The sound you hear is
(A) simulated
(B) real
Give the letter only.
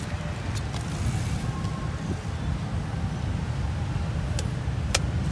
B